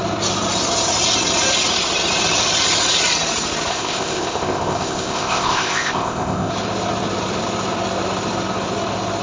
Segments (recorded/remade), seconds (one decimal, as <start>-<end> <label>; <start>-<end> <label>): 0.0-3.7 recorded; 3.7-6.5 remade; 6.5-9.2 recorded